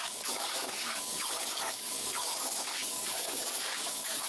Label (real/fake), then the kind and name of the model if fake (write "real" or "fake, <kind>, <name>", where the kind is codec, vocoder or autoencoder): fake, codec, DAC